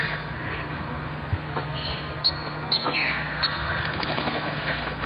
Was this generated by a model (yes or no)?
yes